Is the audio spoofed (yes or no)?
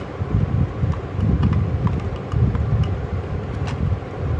no